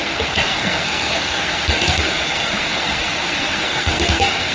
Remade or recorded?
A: remade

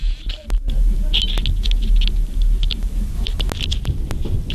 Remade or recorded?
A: recorded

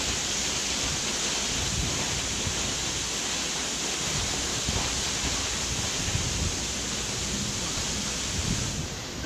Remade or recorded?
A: recorded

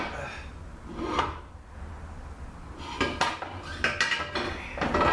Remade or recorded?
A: recorded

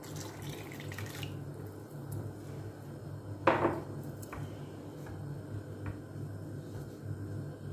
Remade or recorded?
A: recorded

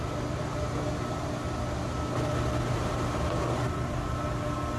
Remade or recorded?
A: recorded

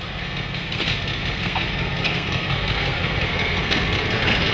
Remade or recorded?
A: remade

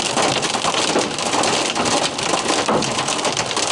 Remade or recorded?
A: recorded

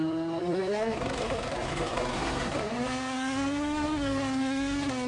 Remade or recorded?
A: remade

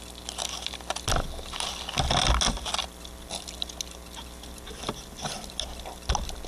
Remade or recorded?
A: recorded